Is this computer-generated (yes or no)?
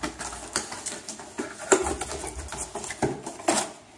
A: no